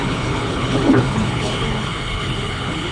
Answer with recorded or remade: remade